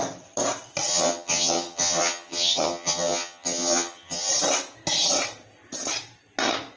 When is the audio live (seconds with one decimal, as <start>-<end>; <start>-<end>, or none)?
0.0-0.9; 4.3-6.8